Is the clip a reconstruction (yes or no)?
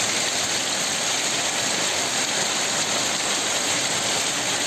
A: no